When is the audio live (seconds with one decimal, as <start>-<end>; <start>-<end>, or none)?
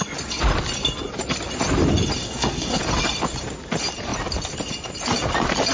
0.0-2.2; 2.8-5.7